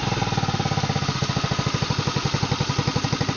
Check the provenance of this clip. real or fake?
real